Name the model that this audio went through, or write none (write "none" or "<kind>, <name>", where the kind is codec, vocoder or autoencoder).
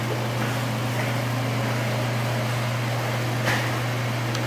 none